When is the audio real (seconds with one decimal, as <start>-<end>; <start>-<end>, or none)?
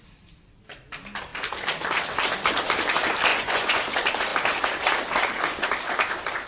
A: 0.0-3.3; 3.8-6.5